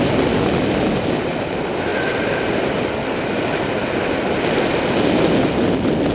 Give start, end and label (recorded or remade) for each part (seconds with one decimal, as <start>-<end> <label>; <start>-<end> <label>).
0.0-6.1 recorded

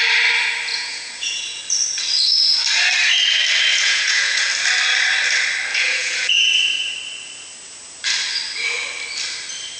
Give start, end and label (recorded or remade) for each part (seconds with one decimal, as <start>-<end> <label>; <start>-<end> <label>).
0.0-0.7 recorded; 0.7-1.6 remade; 1.6-3.7 recorded; 3.7-4.5 remade; 4.5-5.7 recorded; 5.7-6.5 remade; 6.5-9.8 recorded

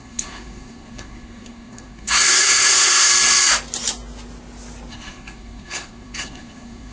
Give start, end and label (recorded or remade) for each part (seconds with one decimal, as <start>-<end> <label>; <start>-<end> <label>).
0.0-3.1 remade; 3.1-4.9 recorded; 4.9-6.9 remade

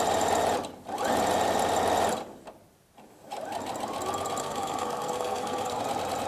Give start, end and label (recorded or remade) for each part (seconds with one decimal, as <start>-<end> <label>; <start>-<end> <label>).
0.0-4.4 recorded; 4.4-5.8 remade; 5.8-6.3 recorded

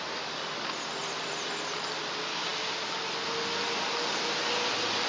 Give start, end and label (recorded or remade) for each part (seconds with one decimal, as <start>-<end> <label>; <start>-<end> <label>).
0.0-5.1 recorded

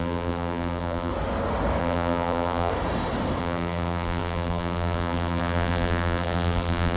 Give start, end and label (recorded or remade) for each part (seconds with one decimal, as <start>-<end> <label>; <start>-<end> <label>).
0.0-1.1 remade; 1.1-1.8 recorded; 1.8-2.7 remade; 2.7-3.4 recorded; 3.4-7.0 remade

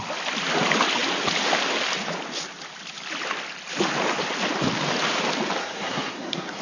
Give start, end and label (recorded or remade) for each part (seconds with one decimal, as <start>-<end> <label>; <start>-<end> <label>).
0.0-5.6 recorded; 5.6-6.6 remade

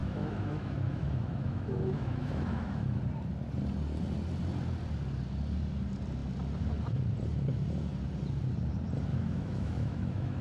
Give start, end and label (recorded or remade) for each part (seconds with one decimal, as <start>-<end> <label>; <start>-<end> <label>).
0.0-3.0 remade; 3.0-9.1 recorded; 9.1-10.4 remade